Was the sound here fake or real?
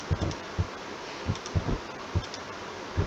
real